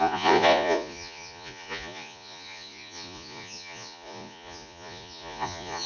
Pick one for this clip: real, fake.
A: fake